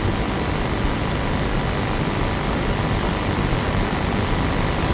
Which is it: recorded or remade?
recorded